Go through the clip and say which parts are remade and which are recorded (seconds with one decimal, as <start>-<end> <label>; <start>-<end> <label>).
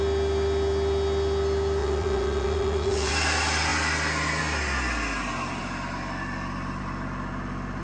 0.0-1.8 recorded; 1.8-3.1 remade; 3.1-7.8 recorded